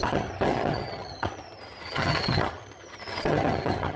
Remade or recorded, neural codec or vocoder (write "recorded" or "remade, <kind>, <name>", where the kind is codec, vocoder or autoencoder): remade, vocoder, HiFi-GAN